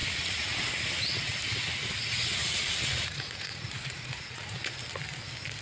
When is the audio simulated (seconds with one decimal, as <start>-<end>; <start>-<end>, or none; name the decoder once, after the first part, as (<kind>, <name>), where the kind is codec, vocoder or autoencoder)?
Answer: 0.0-0.7 (vocoder, Vocos); 2.4-4.8